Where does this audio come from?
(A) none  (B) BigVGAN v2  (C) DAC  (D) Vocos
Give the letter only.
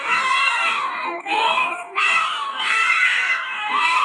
C